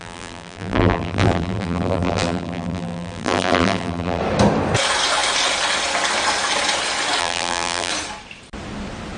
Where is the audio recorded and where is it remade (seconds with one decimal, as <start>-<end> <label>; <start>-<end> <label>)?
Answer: 0.0-4.2 remade; 4.2-7.2 recorded; 7.2-7.9 remade; 7.9-9.2 recorded